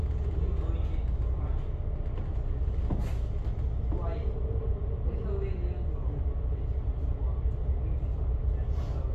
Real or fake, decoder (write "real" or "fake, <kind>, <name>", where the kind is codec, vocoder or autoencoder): real